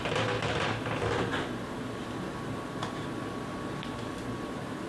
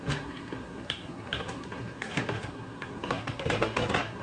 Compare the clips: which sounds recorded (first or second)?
first